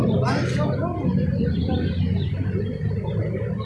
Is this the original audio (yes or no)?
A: yes